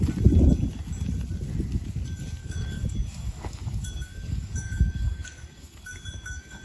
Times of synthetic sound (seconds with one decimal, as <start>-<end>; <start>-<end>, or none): 2.4-6.6